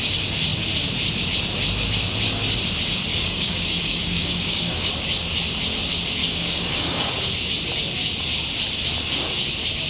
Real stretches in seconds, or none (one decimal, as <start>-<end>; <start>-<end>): 0.0-3.1; 4.9-6.2; 7.1-9.9